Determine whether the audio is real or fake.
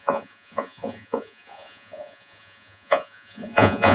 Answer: fake